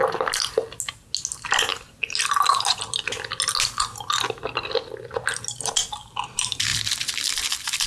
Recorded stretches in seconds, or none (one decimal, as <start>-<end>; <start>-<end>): 0.0-7.9